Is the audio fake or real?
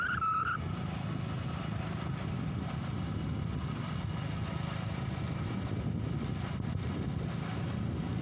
real